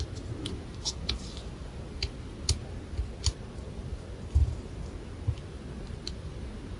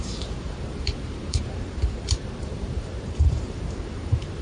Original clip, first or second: first